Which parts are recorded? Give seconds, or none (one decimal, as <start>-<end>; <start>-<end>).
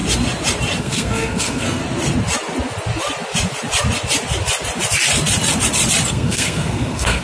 0.0-0.8; 1.8-6.1